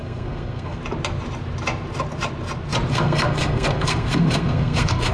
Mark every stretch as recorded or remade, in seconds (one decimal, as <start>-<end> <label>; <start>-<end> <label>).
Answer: 0.0-0.8 remade; 0.8-2.9 recorded; 2.9-5.1 remade